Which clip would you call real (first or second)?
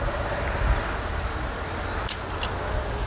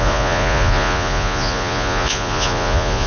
first